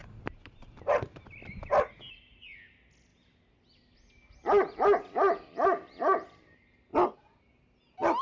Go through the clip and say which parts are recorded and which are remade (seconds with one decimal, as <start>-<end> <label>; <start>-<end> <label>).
0.0-8.2 recorded